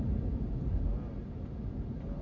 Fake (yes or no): no